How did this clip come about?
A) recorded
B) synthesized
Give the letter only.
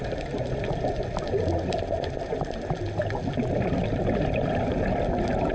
A